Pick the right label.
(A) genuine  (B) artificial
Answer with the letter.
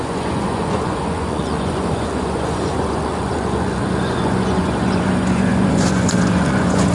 B